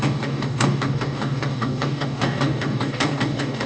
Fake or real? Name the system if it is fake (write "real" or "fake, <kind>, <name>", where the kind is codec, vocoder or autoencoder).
fake, codec, DAC